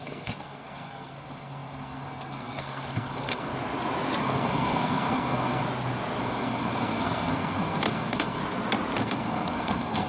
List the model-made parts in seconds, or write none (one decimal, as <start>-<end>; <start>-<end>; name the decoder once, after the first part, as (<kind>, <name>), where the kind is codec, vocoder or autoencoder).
0.0-3.5 (codec, SNAC); 4.2-5.6; 6.2-8.4; 9.0-10.1